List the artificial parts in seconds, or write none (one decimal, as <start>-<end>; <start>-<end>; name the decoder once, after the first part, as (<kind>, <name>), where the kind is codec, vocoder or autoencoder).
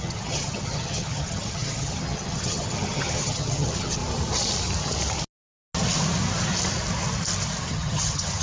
0.0-4.0 (vocoder, HiFi-GAN); 7.6-8.4